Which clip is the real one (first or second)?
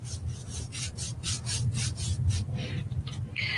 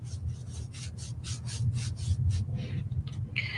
second